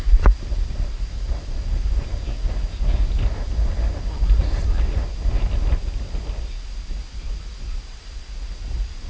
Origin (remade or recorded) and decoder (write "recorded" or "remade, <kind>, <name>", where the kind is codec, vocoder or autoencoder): recorded